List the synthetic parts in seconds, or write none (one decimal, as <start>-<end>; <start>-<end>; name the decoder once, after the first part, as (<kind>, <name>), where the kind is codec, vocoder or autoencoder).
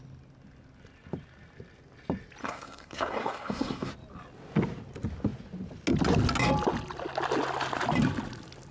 2.4-3.9 (codec, SNAC)